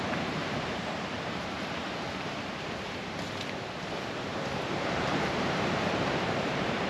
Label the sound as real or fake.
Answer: fake